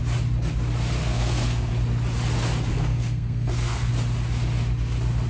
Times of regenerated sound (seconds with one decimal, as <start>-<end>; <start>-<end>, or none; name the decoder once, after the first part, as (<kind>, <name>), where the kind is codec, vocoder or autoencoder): 1.0-1.7 (codec, SNAC); 2.7-3.9